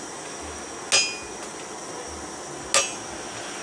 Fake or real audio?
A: real